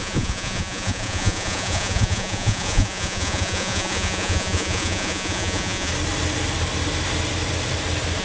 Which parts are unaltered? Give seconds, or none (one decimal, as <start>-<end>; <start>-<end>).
5.9-8.2